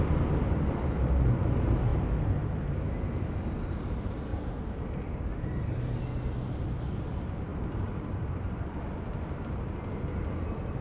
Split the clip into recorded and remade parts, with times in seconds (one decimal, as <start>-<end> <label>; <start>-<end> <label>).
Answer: 0.0-4.3 recorded; 4.3-6.0 remade; 6.0-7.5 recorded; 7.5-8.5 remade; 8.5-10.8 recorded